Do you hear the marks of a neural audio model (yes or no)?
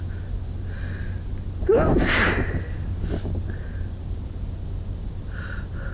no